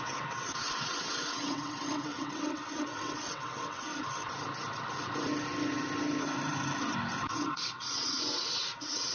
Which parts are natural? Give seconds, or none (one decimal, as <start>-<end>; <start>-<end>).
3.9-7.3